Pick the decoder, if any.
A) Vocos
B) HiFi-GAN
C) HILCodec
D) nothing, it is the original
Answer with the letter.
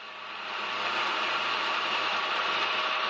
D